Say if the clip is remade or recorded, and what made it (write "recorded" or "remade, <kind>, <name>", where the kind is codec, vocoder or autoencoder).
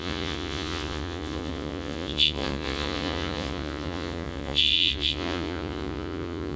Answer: remade, vocoder, Vocos